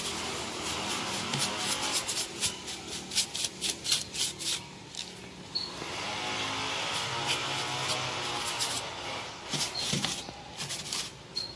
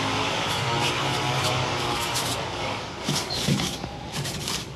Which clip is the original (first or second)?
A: first